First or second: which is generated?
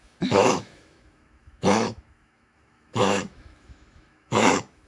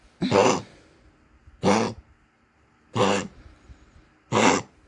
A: first